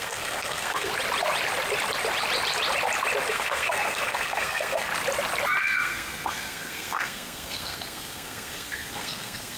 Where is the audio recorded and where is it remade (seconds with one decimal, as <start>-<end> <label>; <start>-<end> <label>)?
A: 0.0-0.9 remade; 0.9-3.3 recorded; 3.3-4.9 remade; 4.9-5.6 recorded; 5.6-9.6 remade